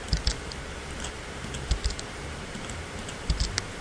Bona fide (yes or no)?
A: yes